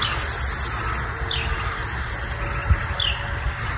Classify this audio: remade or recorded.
recorded